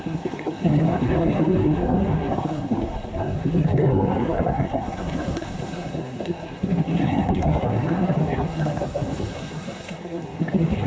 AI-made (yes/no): yes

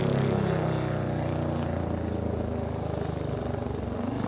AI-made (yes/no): no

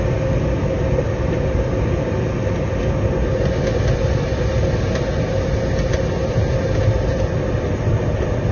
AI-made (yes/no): no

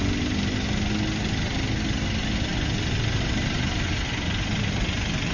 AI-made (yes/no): no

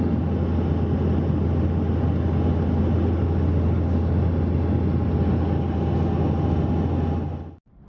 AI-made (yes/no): no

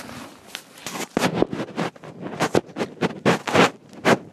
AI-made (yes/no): no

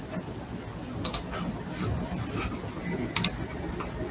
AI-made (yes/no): no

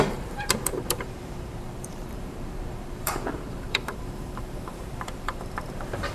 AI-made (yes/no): yes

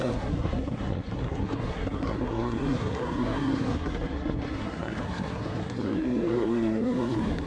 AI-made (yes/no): yes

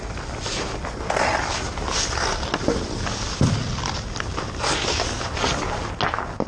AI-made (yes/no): no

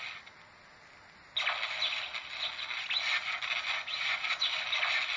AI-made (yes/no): no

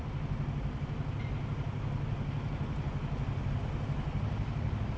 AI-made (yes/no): no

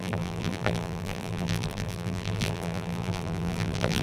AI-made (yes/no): yes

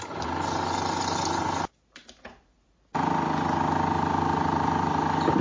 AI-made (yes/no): no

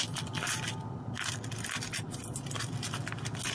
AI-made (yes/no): no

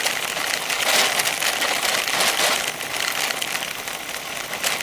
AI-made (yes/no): no